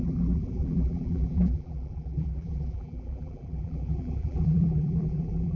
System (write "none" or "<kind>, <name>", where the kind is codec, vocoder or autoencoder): vocoder, BigVGAN v2